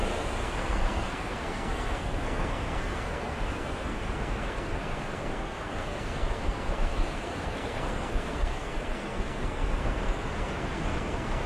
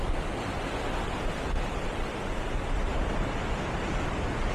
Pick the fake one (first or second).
first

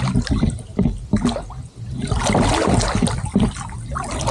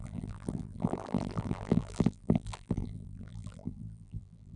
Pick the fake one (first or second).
second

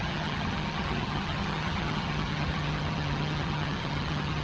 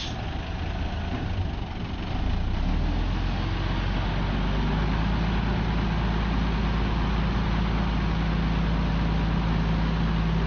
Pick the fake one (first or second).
first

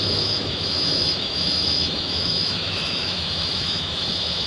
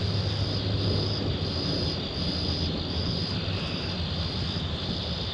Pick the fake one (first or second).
first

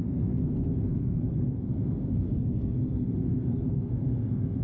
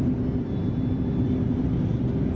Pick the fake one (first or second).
first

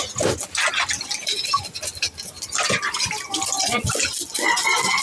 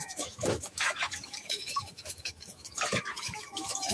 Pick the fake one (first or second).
second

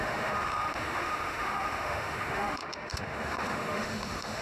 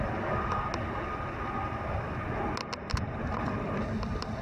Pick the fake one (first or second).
first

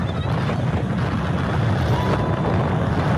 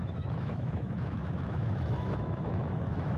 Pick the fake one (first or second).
second